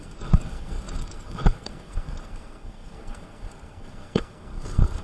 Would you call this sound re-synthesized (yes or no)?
yes